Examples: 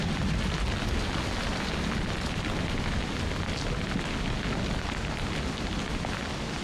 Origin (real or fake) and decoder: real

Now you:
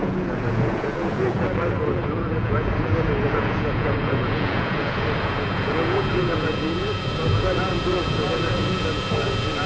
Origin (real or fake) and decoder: fake, vocoder, Vocos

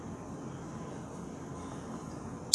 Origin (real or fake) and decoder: real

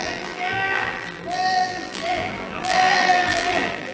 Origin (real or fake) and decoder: fake, vocoder, BigVGAN v2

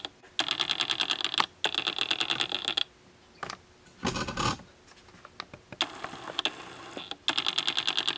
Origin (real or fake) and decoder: real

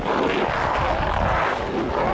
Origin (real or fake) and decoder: real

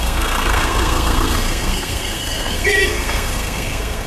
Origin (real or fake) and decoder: fake, codec, SNAC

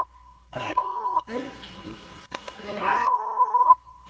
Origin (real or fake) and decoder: fake, codec, SNAC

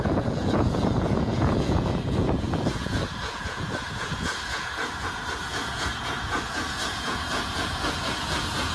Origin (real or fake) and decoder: fake, vocoder, Vocos